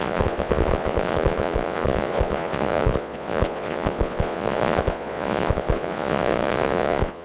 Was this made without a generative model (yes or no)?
no